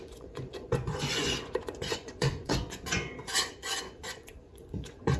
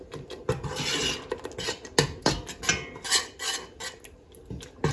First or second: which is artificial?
first